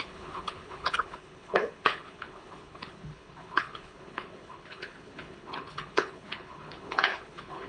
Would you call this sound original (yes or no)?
no